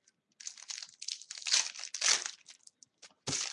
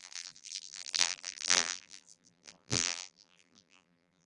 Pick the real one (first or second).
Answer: first